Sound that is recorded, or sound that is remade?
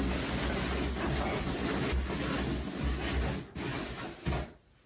recorded